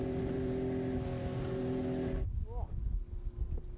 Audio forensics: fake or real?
real